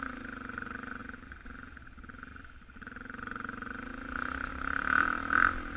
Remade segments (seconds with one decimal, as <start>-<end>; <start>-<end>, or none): none